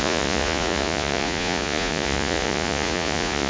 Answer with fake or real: fake